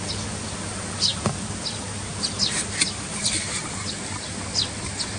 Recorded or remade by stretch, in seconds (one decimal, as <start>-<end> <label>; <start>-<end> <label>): 0.0-5.2 recorded